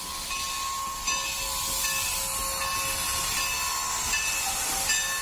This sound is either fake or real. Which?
real